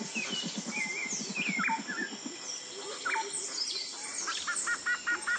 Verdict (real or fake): real